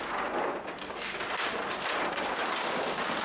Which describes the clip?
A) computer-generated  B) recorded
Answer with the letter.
B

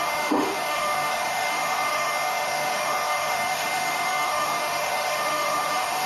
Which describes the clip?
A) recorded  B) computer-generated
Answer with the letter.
B